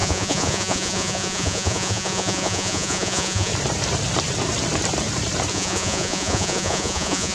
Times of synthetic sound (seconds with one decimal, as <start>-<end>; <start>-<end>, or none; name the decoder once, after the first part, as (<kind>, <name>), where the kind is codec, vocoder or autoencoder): 0.0-3.5 (vocoder, Vocos); 5.5-7.3